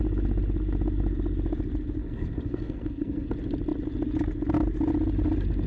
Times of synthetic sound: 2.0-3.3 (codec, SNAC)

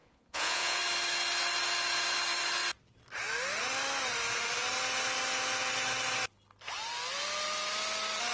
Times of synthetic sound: 0.0-0.8 (vocoder, Vocos)

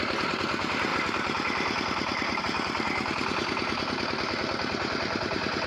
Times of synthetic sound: 0.9-2.4 (vocoder, BigVGAN v2)